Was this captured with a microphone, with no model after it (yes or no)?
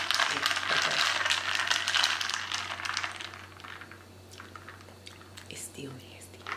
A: yes